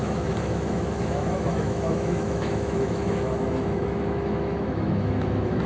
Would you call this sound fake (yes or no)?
yes